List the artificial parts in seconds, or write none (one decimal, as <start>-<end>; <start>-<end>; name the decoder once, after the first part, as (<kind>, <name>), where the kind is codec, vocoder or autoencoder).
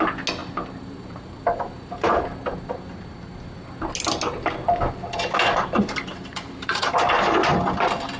0.4-2.2 (vocoder, BigVGAN v2); 6.1-6.9